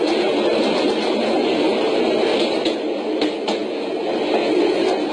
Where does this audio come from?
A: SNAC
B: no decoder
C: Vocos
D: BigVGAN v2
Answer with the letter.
B